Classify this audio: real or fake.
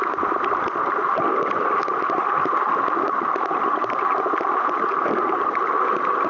real